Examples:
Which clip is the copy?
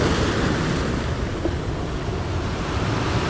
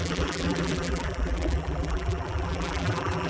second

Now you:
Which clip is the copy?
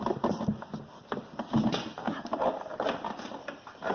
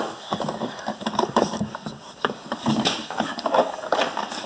second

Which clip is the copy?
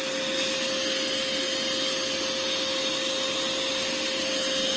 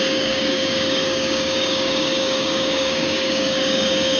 second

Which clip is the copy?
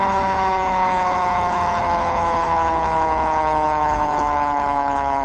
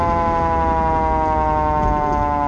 first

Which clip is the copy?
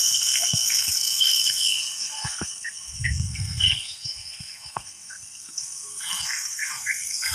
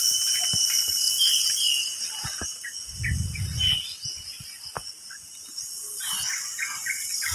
first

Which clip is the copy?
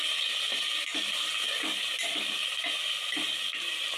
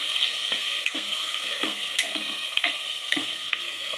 second